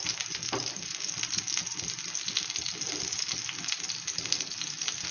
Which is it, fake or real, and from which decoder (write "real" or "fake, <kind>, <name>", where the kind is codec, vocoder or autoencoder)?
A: real